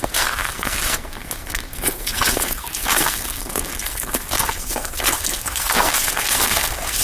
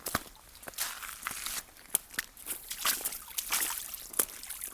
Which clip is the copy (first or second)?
first